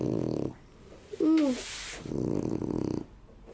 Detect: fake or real real